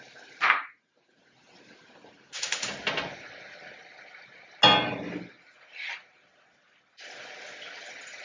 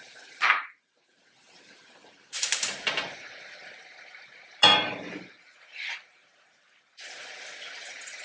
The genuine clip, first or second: first